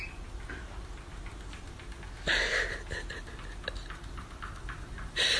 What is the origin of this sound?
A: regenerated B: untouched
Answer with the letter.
B